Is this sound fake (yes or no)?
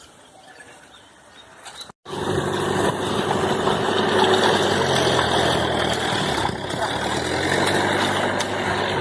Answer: no